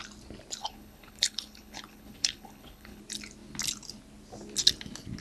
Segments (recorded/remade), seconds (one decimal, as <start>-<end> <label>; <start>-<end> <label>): 0.0-0.6 recorded; 0.6-3.0 remade; 3.0-5.2 recorded